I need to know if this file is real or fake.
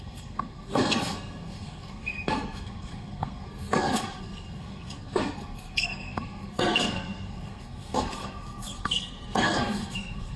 fake